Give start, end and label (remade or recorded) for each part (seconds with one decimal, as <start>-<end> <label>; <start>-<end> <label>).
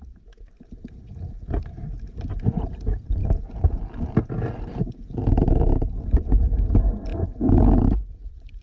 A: 0.0-3.2 remade; 3.2-4.6 recorded; 4.6-8.6 remade